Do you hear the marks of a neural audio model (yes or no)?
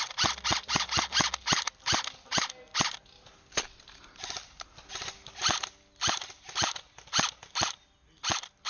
no